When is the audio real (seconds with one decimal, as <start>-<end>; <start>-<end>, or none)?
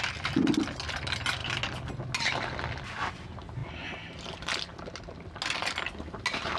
0.0-6.6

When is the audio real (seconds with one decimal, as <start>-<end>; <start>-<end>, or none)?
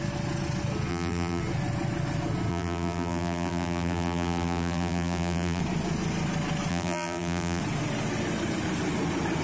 0.0-0.9; 1.4-2.5; 5.6-6.7; 7.6-9.4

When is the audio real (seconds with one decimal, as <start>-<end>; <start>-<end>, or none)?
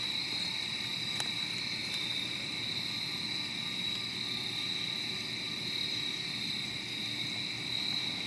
0.0-1.8; 2.4-8.3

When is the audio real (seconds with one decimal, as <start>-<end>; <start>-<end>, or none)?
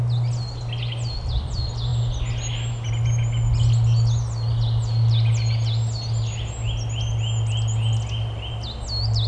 0.0-9.3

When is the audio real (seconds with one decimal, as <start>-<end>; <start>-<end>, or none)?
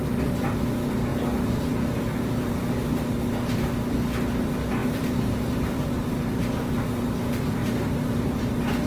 0.0-1.1; 2.5-4.8; 6.1-7.6; 8.4-8.9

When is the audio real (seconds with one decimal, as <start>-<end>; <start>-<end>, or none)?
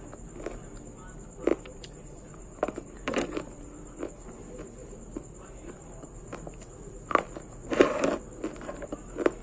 0.0-1.5; 3.4-9.4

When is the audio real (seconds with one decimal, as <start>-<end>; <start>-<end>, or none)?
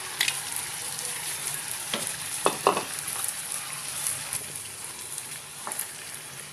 0.0-0.8; 3.4-5.5; 6.1-6.5